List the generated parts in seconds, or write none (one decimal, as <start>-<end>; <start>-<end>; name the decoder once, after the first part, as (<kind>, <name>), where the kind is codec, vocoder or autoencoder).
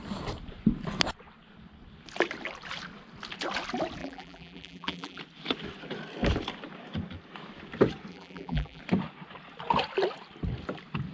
4.0-5.2 (vocoder, BigVGAN v2); 8.1-8.8